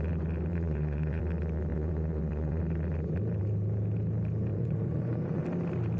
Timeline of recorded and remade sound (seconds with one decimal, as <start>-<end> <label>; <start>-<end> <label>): 0.0-0.5 recorded; 0.5-1.2 remade; 1.2-1.7 recorded; 1.7-2.6 remade; 2.6-4.5 recorded; 4.5-5.4 remade; 5.4-6.0 recorded